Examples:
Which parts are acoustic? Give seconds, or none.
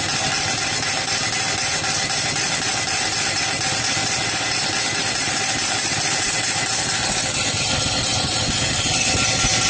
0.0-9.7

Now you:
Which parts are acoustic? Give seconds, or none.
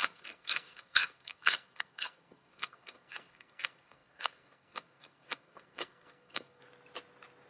6.6-7.5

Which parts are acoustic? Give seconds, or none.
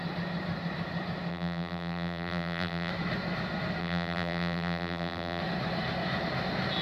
0.0-1.3; 2.9-3.8; 5.4-6.8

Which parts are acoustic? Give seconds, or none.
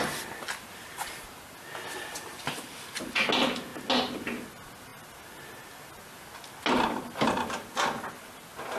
0.0-2.1; 3.0-8.8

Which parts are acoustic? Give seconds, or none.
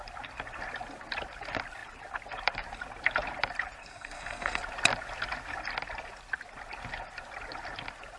0.0-3.8; 4.6-8.2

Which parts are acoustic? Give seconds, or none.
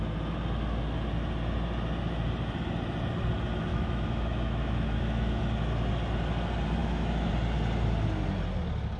0.0-3.7; 5.4-6.8; 7.3-9.0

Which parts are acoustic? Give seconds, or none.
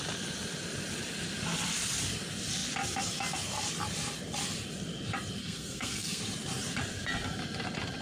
0.0-5.4; 6.2-8.0